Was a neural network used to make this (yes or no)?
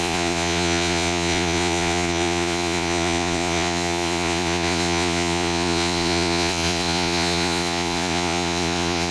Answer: yes